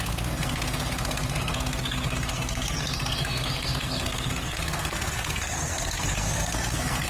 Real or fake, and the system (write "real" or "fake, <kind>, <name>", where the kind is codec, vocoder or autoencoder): fake, codec, SNAC